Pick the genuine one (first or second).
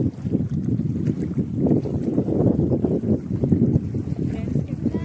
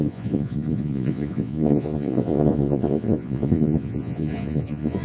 first